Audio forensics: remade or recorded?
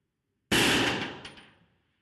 recorded